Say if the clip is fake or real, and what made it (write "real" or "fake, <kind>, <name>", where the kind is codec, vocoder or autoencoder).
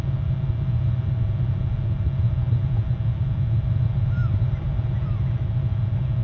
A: real